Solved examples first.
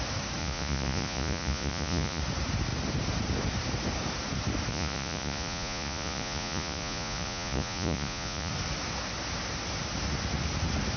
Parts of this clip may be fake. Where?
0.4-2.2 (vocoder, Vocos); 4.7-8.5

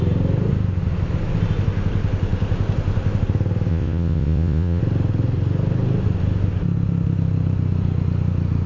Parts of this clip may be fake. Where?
3.7-4.8 (vocoder, Vocos)

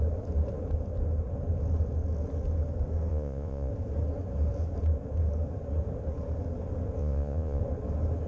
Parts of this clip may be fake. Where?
3.1-3.7 (vocoder, Vocos); 7.0-7.6

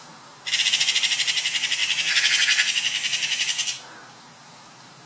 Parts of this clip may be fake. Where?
none

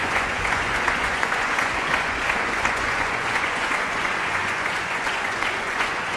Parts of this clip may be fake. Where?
0.0-6.2 (vocoder, Vocos)

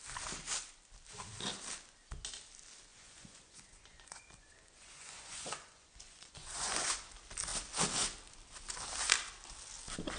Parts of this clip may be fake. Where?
2.9-7.1 (vocoder, Vocos)